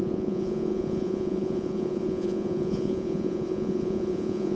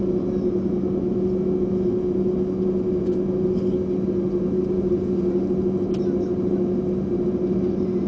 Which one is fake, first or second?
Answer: first